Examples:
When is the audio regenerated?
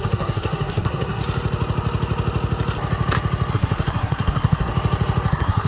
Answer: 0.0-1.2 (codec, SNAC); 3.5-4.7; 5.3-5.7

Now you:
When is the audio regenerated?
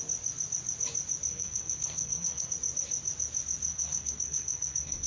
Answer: 1.3-2.5 (codec, SNAC); 3.7-5.1